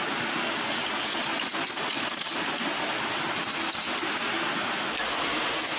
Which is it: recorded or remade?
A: recorded